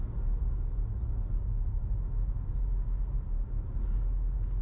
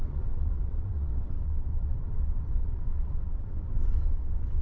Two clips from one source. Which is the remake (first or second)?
second